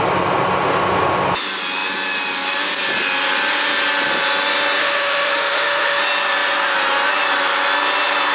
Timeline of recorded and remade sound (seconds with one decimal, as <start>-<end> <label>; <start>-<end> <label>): 0.0-4.8 recorded; 4.8-6.0 remade; 6.0-8.3 recorded